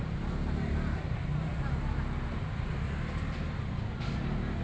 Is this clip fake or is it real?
real